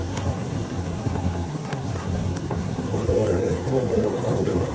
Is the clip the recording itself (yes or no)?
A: no